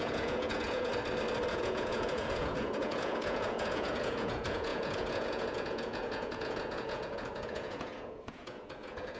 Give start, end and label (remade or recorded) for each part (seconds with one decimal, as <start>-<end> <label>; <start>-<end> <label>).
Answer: 0.0-0.9 remade; 0.9-1.5 recorded; 1.5-9.2 remade